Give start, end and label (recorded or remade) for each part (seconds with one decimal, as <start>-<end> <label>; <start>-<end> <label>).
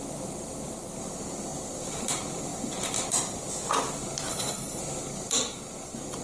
0.0-4.3 recorded; 4.3-4.8 remade; 4.8-6.2 recorded